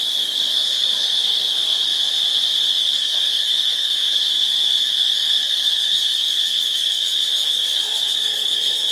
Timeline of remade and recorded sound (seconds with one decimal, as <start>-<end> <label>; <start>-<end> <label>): 0.0-1.9 remade; 1.9-2.7 recorded; 2.7-8.9 remade